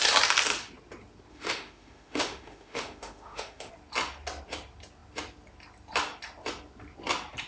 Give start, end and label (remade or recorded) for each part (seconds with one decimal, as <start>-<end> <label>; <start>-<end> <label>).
0.0-1.3 recorded; 1.3-3.7 remade; 3.7-7.5 recorded